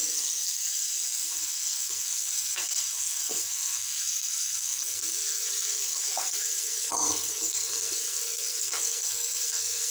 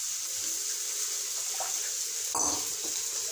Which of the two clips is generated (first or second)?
first